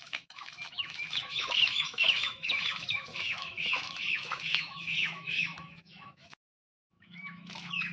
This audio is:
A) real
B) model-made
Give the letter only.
B